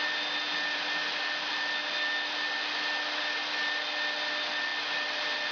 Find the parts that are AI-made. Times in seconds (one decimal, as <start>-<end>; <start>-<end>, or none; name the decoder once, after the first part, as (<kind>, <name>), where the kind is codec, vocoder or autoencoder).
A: none